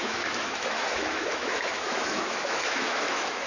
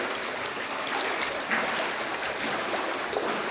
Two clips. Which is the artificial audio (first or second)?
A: first